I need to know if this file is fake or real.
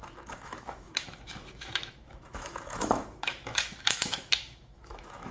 fake